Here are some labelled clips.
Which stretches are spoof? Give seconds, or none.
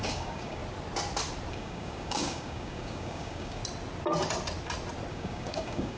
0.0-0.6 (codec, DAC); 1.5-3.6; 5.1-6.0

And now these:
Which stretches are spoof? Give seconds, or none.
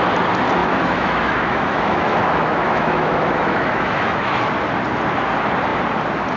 0.6-4.4 (autoencoder, DAC-VAE)